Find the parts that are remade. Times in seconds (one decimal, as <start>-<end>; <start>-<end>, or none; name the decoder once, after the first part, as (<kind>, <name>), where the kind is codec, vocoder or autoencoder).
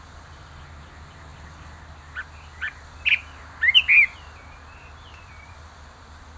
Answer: none